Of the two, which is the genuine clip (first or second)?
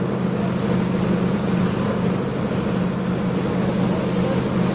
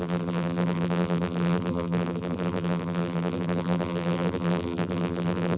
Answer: first